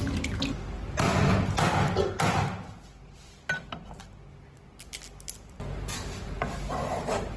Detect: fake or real real